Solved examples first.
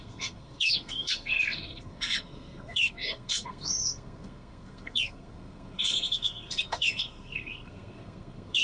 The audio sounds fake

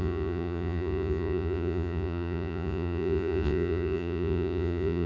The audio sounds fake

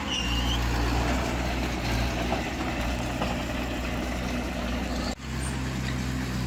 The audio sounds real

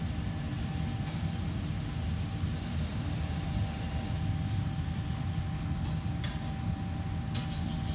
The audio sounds real